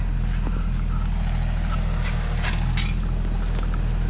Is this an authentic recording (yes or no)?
yes